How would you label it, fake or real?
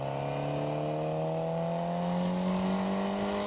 real